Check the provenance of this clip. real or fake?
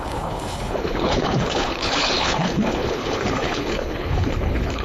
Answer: fake